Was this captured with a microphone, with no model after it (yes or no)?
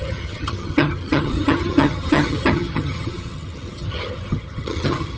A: no